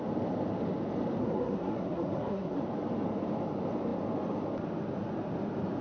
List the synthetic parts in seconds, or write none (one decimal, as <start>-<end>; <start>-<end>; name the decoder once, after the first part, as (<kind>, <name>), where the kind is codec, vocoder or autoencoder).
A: 1.2-2.6 (codec, SNAC)